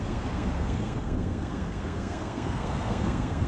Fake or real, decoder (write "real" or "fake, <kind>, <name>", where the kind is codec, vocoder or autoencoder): fake, codec, SNAC